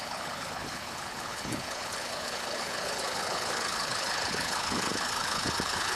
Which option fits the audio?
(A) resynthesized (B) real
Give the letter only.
A